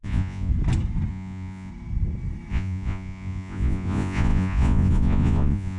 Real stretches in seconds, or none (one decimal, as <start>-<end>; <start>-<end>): 0.5-1.1; 1.7-2.5